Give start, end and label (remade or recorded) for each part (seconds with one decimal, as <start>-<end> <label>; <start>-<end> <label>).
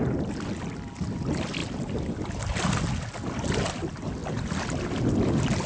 0.0-5.7 recorded